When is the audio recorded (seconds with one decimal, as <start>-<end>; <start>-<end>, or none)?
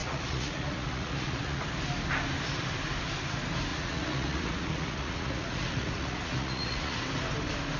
1.6-3.7; 7.0-7.8